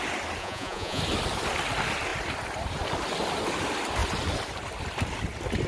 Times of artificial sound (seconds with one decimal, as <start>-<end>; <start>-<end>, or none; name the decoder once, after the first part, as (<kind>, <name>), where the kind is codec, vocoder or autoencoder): 0.4-1.0 (vocoder, Vocos)